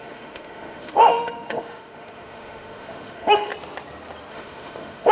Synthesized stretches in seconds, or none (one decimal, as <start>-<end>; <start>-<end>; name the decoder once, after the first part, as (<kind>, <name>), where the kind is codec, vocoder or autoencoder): 0.0-3.5 (autoencoder, DAC-VAE); 4.3-5.1